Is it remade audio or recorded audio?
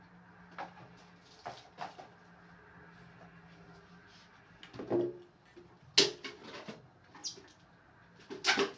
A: recorded